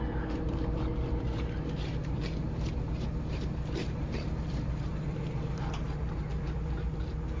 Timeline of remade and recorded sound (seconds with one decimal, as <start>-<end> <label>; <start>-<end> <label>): 0.0-6.3 remade; 6.3-7.4 recorded